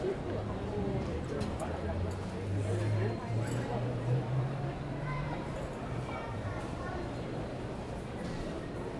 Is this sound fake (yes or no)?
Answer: yes